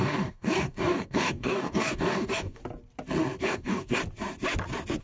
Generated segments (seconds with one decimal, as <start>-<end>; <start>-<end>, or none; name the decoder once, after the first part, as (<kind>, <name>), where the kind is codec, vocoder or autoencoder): 0.0-2.6 (codec, DAC); 3.4-4.0